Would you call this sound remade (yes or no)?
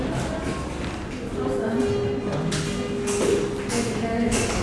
no